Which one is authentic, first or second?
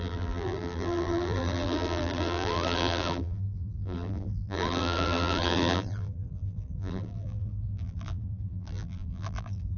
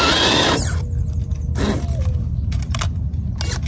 second